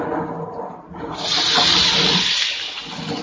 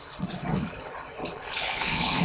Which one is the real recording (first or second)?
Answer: first